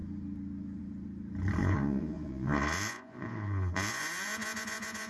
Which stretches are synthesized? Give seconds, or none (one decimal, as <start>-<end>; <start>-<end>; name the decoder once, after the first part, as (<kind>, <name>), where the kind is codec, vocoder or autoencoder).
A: 1.6-5.1 (vocoder, Vocos)